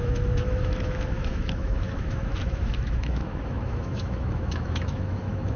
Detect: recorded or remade remade